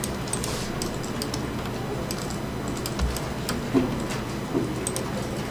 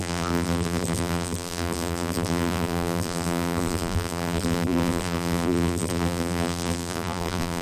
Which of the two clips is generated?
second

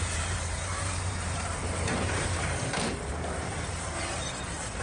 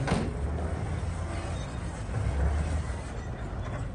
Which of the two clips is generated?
first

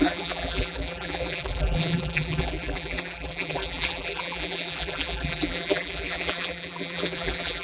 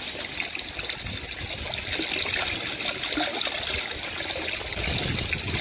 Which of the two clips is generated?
first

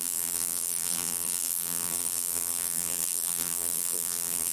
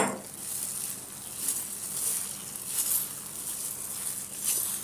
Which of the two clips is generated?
first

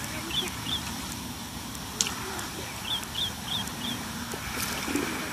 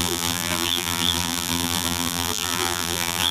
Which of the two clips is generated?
second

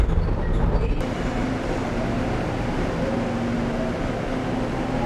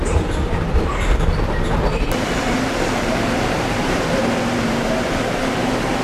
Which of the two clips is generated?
second